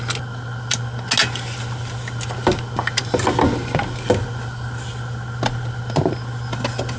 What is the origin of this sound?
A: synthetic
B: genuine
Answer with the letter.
B